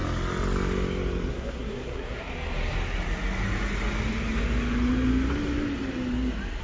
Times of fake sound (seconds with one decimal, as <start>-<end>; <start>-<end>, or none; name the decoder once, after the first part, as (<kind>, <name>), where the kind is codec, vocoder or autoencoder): 1.3-2.3 (codec, SNAC)